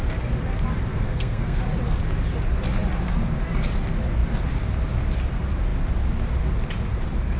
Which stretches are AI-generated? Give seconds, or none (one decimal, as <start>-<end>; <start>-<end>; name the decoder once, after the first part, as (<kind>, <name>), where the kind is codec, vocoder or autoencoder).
0.9-1.6 (codec, SNAC)